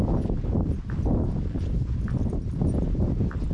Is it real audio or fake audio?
real